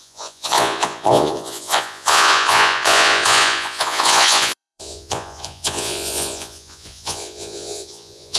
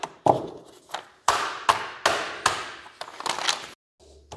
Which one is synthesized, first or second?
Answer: first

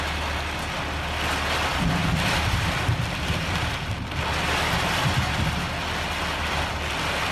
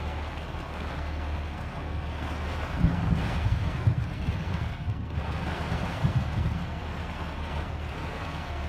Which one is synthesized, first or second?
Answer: second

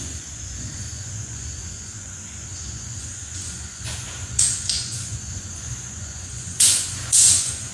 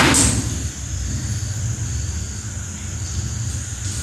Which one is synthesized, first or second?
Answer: first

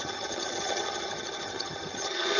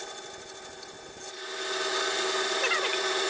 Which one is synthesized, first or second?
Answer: first